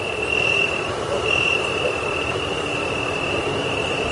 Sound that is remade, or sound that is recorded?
recorded